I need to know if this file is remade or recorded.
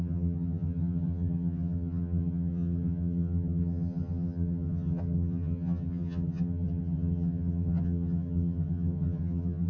remade